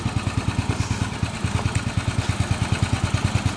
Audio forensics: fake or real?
real